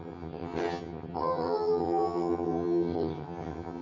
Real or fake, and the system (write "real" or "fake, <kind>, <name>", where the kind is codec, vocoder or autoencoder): fake, vocoder, HiFi-GAN